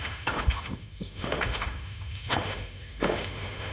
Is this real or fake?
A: fake